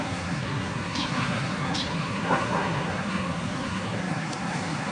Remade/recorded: remade